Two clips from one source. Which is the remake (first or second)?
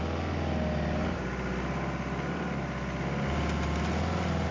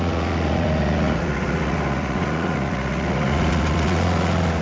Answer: second